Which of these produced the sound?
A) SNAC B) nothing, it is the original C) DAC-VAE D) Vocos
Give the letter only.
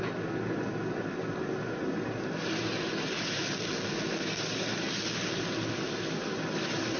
B